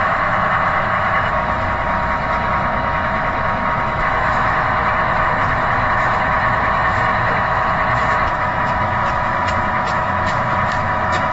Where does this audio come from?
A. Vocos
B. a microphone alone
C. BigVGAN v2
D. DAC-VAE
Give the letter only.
D